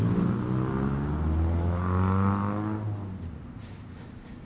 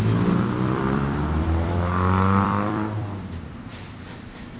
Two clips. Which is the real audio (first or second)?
first